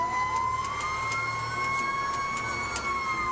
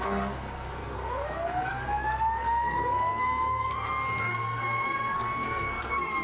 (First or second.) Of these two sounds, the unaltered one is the first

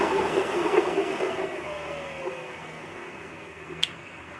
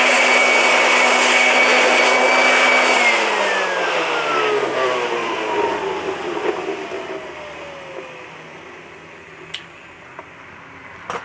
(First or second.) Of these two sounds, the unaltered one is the second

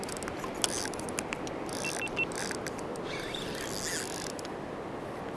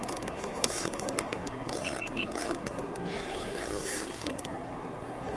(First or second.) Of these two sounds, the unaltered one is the first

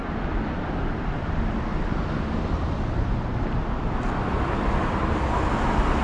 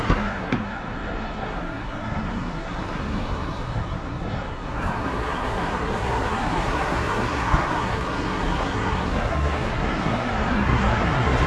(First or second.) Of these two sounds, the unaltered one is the first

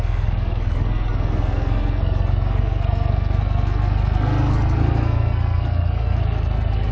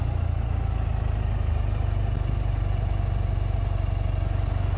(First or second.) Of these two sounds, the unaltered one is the second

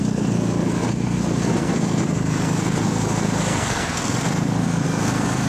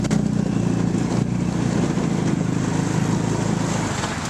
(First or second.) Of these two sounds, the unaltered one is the second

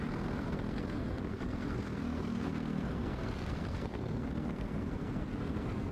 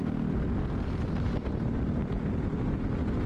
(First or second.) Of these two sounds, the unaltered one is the second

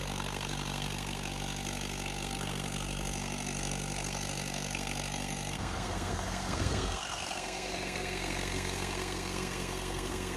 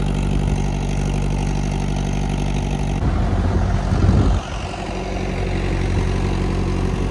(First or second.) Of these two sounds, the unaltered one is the second